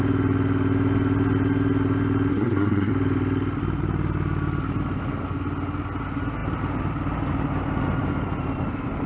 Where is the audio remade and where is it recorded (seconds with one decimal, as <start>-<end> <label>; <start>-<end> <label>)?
0.0-2.3 recorded; 2.3-2.9 remade; 2.9-9.1 recorded